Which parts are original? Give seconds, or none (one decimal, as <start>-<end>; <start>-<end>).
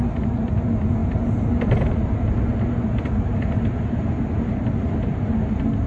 0.0-5.9